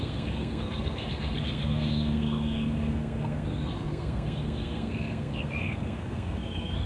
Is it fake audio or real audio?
fake